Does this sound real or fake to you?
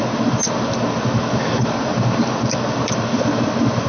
real